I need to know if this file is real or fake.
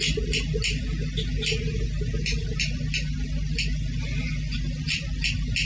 real